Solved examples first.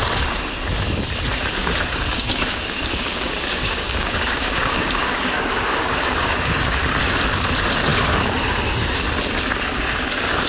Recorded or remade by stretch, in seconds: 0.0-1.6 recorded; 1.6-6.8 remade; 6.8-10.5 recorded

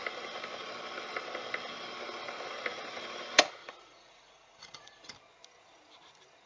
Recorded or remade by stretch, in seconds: 0.0-3.6 recorded; 3.6-5.1 remade; 5.1-6.5 recorded

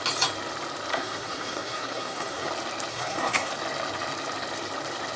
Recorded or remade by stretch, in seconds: 0.0-0.9 recorded; 0.9-2.5 remade; 2.5-2.9 recorded; 2.9-3.5 remade; 3.5-5.2 recorded

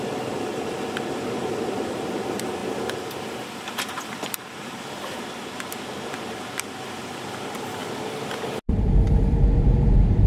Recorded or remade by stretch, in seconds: 0.0-7.8 remade; 7.8-8.7 recorded; 8.7-10.3 remade

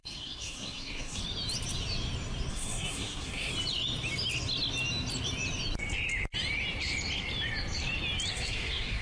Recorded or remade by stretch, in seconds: 0.0-1.2 remade; 1.2-2.5 recorded; 2.5-3.5 remade; 3.5-8.3 recorded; 8.3-9.0 remade

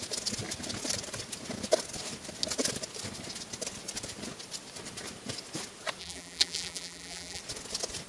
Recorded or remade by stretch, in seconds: 0.0-6.0 recorded; 6.0-7.4 remade; 7.4-8.1 recorded

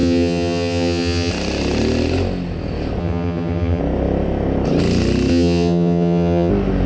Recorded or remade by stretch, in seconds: 0.0-1.3 remade; 1.3-3.0 recorded; 3.0-3.8 remade; 3.8-5.3 recorded; 5.3-6.5 remade; 6.5-6.9 recorded

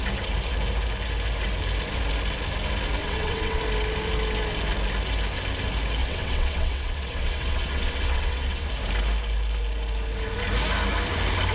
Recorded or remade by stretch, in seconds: 0.0-3.0 recorded; 3.0-3.6 remade; 3.6-6.0 recorded; 6.0-8.7 remade; 8.7-11.5 recorded